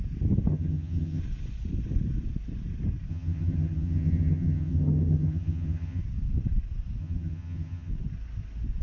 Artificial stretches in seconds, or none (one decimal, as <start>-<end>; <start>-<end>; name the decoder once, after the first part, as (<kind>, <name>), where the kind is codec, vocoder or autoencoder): 0.5-1.2 (vocoder, HiFi-GAN); 3.1-6.0; 7.0-7.9